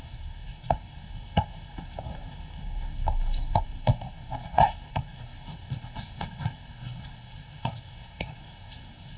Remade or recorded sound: remade